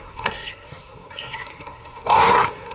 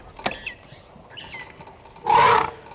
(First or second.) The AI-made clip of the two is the first